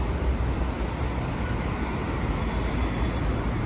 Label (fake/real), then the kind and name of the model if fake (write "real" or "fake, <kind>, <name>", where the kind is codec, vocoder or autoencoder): real